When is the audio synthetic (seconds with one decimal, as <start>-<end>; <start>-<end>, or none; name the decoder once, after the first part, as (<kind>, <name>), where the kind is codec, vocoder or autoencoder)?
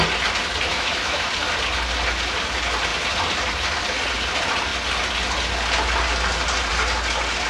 0.7-1.3 (autoencoder, DAC-VAE)